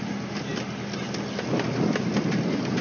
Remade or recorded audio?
recorded